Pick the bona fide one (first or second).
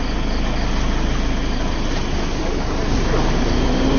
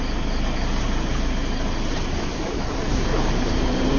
first